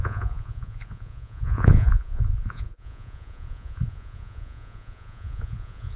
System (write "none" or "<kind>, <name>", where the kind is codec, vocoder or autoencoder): vocoder, Vocos